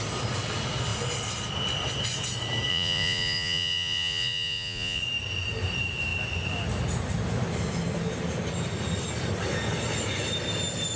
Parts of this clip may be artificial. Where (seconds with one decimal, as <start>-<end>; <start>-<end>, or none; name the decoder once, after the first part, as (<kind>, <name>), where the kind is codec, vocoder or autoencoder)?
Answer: 2.7-5.0 (vocoder, Vocos)